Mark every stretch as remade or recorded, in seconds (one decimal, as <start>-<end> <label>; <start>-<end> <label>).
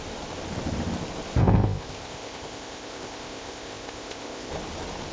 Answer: 0.0-1.4 recorded; 1.4-4.5 remade; 4.5-5.1 recorded